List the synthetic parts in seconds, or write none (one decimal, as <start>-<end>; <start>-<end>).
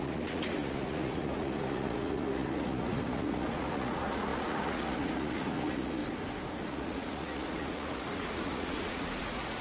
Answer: 0.0-6.0; 6.6-9.6